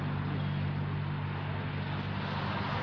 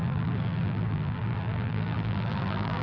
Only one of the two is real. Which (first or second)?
first